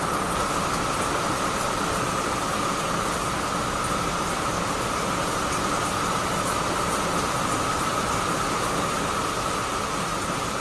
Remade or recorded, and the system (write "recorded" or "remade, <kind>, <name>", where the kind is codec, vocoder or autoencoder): recorded